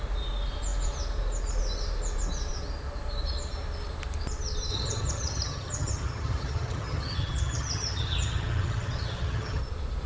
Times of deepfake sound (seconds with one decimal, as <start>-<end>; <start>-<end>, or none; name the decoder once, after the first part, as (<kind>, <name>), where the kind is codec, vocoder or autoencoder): 4.7-9.6 (vocoder, HiFi-GAN)